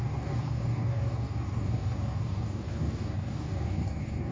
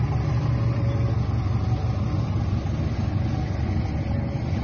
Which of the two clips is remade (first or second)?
first